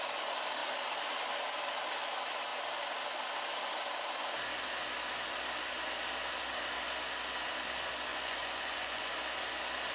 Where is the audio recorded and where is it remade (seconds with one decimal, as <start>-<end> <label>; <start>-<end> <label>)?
0.0-8.1 recorded; 8.1-9.1 remade; 9.1-9.9 recorded